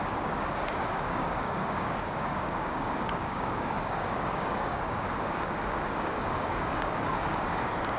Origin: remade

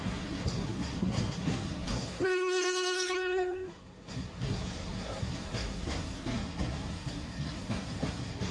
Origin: remade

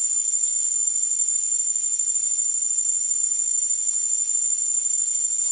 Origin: remade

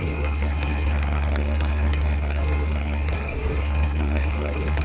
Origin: remade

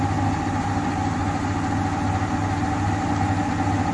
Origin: recorded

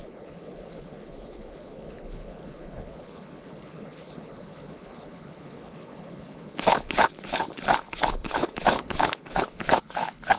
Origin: remade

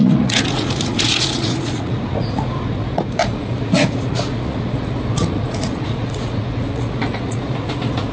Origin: remade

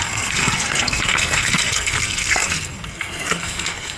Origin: remade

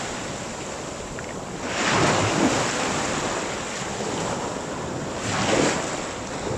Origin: recorded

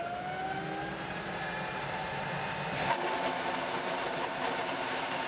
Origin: recorded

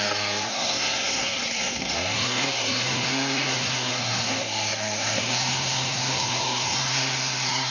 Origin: remade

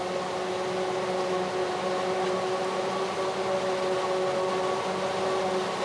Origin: recorded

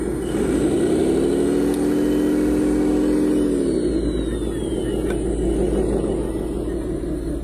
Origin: recorded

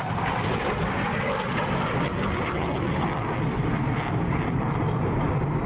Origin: recorded